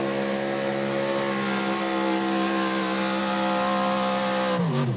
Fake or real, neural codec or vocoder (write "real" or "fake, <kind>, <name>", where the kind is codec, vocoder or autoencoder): real